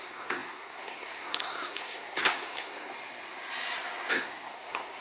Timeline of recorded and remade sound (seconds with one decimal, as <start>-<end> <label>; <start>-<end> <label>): 0.0-2.9 remade; 2.9-4.1 recorded; 4.1-5.0 remade